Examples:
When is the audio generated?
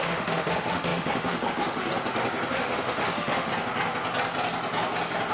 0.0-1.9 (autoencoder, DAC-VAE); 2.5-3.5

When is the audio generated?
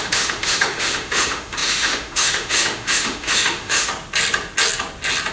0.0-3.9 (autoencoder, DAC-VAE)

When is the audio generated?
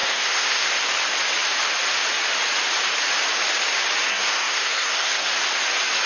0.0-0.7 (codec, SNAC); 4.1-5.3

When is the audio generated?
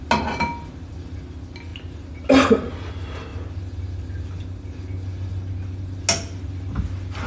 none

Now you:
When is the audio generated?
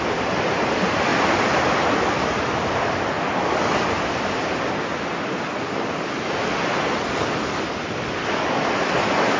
none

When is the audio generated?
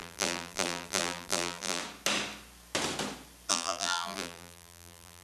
0.0-1.8 (vocoder, BigVGAN v2); 3.5-5.2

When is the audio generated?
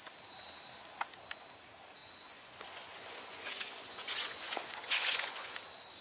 2.0-5.6 (vocoder, Vocos)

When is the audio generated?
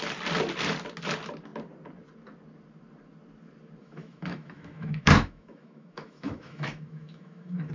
3.8-7.7 (autoencoder, DAC-VAE)